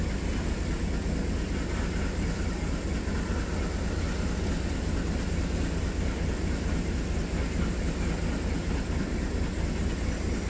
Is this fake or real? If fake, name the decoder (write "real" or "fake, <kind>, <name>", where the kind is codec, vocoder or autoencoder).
real